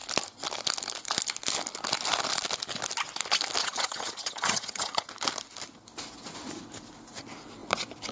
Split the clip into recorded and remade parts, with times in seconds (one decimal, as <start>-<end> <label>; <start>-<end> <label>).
0.0-3.6 recorded; 3.6-5.1 remade; 5.1-8.1 recorded